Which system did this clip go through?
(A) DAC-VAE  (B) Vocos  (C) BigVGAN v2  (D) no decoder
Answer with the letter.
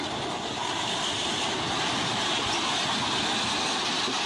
D